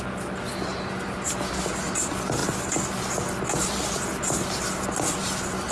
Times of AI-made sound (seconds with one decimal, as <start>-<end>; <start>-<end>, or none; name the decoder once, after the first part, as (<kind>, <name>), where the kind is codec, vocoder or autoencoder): none